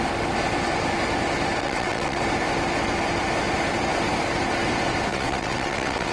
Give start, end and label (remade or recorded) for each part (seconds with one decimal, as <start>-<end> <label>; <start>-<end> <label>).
0.0-1.6 recorded; 1.6-2.2 remade; 2.2-5.1 recorded; 5.1-6.1 remade